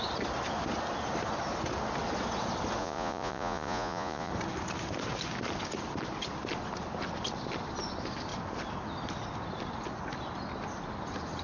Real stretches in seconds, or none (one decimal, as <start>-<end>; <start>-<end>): 0.0-2.8; 4.3-11.4